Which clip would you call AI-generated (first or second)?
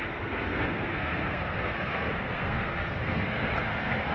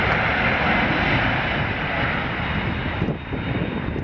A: first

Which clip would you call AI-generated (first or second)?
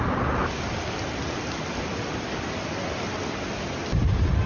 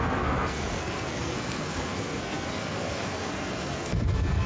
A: second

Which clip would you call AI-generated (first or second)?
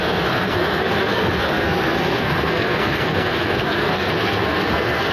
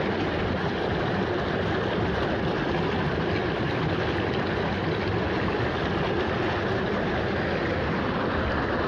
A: first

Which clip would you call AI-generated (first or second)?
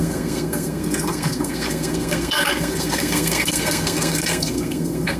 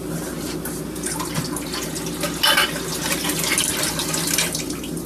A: first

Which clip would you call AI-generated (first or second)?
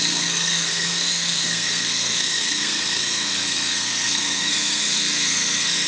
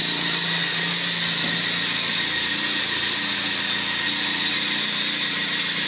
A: first